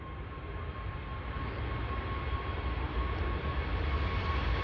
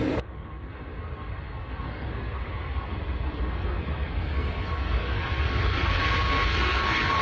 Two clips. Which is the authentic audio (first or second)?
first